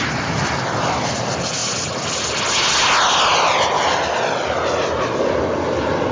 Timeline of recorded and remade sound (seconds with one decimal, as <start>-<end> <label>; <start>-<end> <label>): 0.0-6.1 recorded